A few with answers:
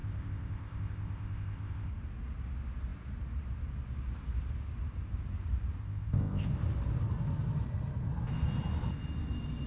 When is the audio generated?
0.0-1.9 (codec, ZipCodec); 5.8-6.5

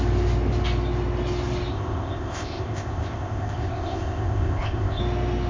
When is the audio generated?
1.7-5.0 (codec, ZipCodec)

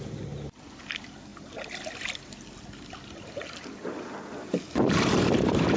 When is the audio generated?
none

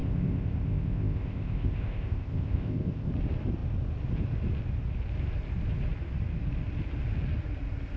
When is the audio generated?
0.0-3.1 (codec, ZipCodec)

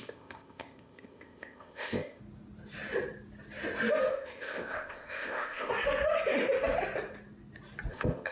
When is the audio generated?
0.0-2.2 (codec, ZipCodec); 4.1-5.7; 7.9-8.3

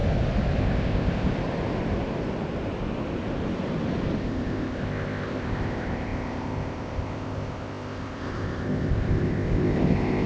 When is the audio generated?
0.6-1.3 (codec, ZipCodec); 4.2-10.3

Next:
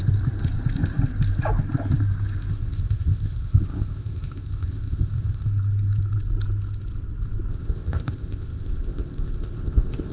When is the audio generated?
2.5-5.5 (codec, ZipCodec); 7.5-10.1